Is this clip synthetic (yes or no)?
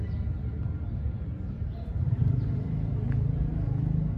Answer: no